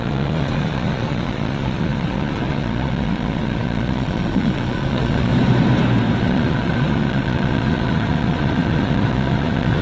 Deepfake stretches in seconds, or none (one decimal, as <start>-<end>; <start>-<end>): 0.0-5.3; 6.2-9.8